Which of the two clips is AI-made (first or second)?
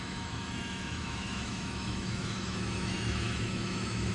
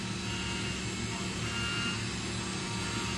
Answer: first